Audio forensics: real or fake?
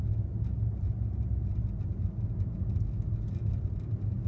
real